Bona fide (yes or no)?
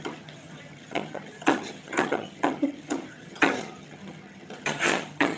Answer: no